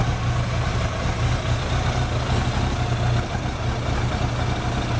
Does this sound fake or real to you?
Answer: real